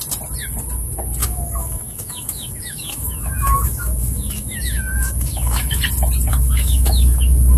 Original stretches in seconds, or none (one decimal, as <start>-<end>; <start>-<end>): 0.0-1.2; 5.8-6.3